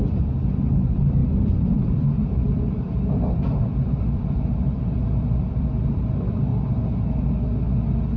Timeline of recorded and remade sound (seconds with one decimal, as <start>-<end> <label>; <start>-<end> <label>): 0.0-6.5 remade; 6.5-8.2 recorded